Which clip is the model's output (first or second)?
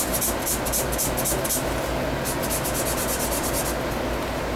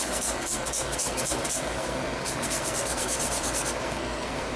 second